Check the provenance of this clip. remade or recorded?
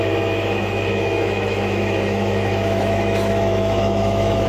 remade